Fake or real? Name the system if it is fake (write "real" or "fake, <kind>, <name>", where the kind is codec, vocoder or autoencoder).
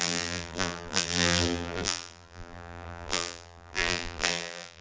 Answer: fake, vocoder, BigVGAN v2